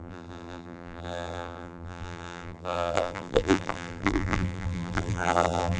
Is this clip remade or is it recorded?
remade